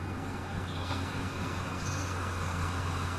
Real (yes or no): no